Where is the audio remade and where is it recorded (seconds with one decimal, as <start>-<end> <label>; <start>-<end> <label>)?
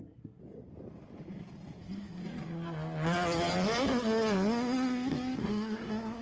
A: 0.0-0.4 remade; 0.4-1.8 recorded; 1.8-2.2 remade; 2.2-5.4 recorded; 5.4-6.2 remade